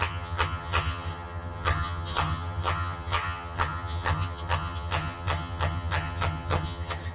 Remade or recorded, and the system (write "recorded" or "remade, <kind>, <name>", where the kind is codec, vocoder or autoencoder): remade, vocoder, HiFi-GAN